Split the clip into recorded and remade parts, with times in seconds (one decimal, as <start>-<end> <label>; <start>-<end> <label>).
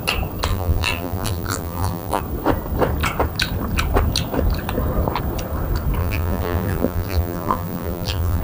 0.0-0.5 recorded; 0.5-2.2 remade; 2.2-6.0 recorded; 6.0-8.4 remade